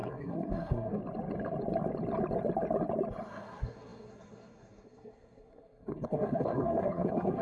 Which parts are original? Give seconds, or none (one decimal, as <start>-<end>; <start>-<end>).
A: 1.0-3.3